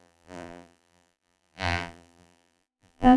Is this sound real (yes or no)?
no